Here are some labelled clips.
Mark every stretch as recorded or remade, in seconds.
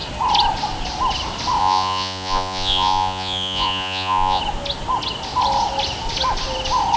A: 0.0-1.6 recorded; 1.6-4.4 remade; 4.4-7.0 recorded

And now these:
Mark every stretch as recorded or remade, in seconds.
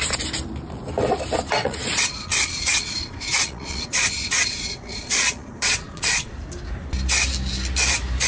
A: 0.0-1.6 recorded; 1.6-6.3 remade; 6.3-8.3 recorded